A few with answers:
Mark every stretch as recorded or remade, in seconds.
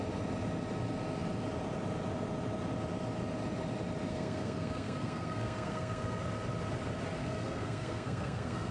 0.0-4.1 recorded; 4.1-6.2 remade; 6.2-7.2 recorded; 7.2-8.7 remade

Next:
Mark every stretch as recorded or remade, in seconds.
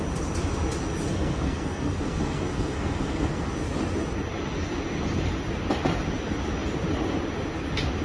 0.0-1.1 recorded; 1.1-3.5 remade; 3.5-8.0 recorded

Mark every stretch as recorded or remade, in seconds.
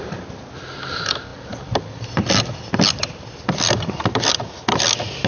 0.0-5.3 recorded